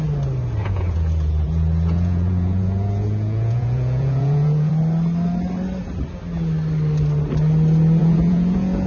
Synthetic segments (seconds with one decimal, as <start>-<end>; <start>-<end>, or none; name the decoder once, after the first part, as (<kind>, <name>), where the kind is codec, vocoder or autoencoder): 0.6-4.7 (vocoder, Vocos); 8.0-8.9